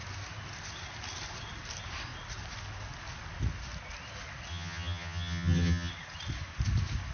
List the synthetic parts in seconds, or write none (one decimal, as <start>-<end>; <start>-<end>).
4.5-5.9